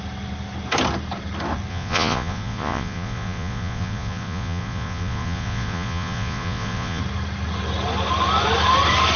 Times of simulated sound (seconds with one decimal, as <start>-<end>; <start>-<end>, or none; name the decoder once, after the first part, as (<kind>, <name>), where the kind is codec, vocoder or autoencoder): 1.7-7.0 (vocoder, Vocos)